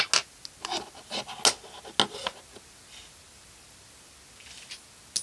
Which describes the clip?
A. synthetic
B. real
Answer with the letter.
B